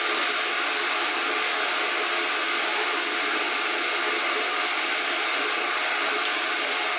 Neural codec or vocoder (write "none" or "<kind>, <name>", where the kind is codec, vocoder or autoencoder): none